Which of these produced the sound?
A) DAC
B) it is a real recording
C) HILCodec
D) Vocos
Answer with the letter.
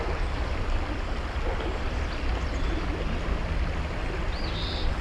B